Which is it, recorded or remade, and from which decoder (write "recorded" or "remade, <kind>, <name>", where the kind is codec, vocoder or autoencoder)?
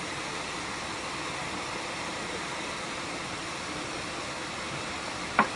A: recorded